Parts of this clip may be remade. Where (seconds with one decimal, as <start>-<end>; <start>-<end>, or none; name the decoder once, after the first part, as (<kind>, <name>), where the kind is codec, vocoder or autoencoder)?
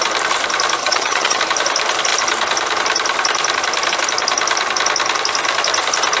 0.8-1.4 (vocoder, HiFi-GAN)